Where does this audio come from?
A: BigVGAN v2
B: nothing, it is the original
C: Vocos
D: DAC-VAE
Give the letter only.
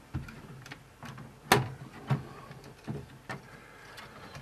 B